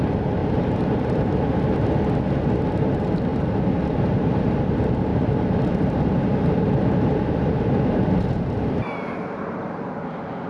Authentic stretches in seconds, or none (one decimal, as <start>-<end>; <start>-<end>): 0.0-0.4; 1.4-3.3; 4.6-5.1; 9.9-10.5